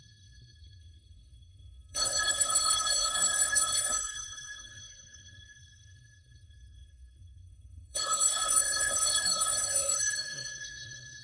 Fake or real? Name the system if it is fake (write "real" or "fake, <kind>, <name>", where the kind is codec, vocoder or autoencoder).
fake, codec, SNAC